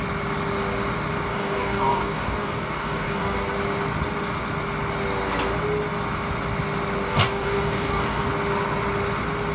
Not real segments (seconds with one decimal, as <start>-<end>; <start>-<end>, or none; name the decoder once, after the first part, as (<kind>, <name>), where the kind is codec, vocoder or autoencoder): 1.3-3.4 (codec, DAC); 7.1-8.3